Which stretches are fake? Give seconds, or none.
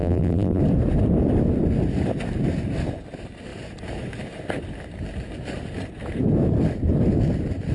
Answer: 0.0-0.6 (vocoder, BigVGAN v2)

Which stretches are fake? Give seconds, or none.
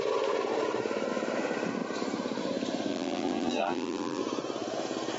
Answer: 2.9-4.2 (vocoder, BigVGAN v2)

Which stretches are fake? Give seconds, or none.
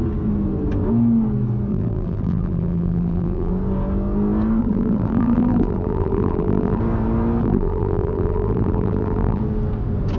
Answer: 1.7-3.5 (vocoder, BigVGAN v2); 4.6-6.8; 7.4-9.4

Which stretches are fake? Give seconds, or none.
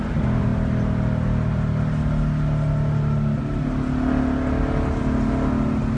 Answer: none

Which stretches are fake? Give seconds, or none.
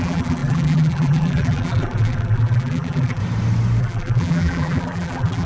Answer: 0.0-3.2 (vocoder, BigVGAN v2); 3.8-5.5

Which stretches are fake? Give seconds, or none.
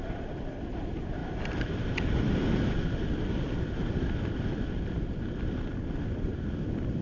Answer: 0.0-7.0 (vocoder, BigVGAN v2)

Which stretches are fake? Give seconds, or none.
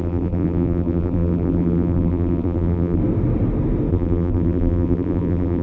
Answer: 0.0-3.0 (vocoder, BigVGAN v2); 3.9-5.6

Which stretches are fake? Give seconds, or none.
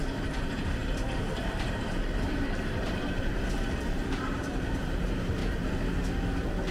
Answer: 0.0-5.4 (vocoder, BigVGAN v2)